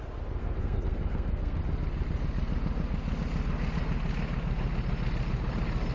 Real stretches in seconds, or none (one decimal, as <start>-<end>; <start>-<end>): 0.0-0.4; 1.6-5.9